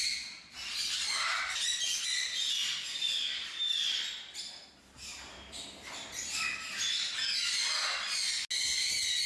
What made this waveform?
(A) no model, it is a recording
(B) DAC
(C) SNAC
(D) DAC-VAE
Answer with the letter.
A